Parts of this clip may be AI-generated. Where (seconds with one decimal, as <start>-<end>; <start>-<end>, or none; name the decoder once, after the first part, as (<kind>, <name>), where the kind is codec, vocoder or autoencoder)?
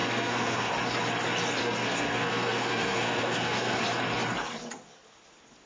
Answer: 0.0-0.7 (codec, SNAC); 1.6-3.8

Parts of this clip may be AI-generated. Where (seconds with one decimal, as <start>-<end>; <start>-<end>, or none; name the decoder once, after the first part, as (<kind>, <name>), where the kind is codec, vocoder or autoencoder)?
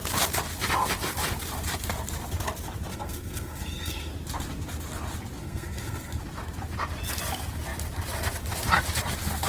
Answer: 2.9-4.1 (codec, SNAC); 5.4-6.2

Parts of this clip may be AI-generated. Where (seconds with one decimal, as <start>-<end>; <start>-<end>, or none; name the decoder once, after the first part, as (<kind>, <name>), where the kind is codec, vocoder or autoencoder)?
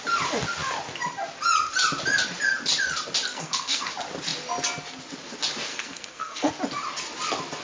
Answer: 3.3-3.9 (codec, SNAC); 5.7-6.5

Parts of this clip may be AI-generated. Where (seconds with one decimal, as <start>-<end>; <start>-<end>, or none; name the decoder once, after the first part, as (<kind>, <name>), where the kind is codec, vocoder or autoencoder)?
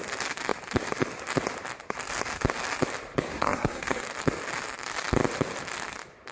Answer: 3.3-4.0 (codec, SNAC)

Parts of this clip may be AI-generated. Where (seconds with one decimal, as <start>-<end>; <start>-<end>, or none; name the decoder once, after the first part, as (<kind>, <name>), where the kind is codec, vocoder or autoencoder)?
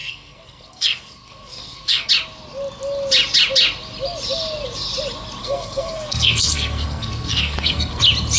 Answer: 0.0-2.1 (codec, SNAC); 5.4-8.0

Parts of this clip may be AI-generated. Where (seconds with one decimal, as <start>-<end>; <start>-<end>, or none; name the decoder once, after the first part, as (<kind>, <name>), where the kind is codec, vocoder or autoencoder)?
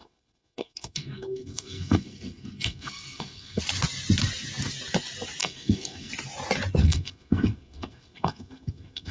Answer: 0.0-3.6 (codec, SNAC); 5.4-6.1; 6.8-9.1